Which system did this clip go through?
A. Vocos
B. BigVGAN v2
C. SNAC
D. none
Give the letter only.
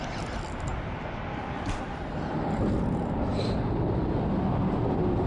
D